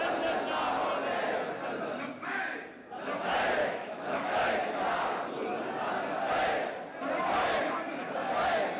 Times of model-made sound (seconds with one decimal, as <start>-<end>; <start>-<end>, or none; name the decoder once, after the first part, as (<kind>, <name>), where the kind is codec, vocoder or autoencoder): 3.6-4.5 (autoencoder, DAC-VAE)